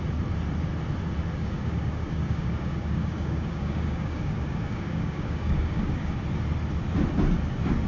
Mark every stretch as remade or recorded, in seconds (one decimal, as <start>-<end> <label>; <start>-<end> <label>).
0.0-1.4 recorded; 1.4-6.1 remade; 6.1-7.9 recorded